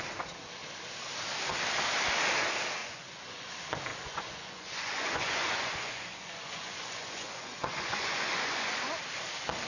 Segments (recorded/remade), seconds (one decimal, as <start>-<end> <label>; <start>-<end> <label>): 0.0-2.8 recorded; 2.8-3.5 remade; 3.5-3.9 recorded; 3.9-8.8 remade; 8.8-9.7 recorded